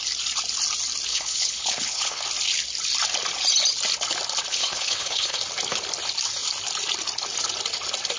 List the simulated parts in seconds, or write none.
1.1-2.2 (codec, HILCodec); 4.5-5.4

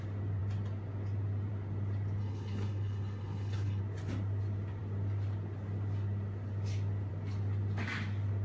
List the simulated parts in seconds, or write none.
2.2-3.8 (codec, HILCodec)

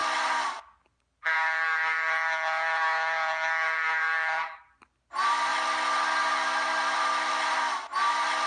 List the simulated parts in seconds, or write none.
none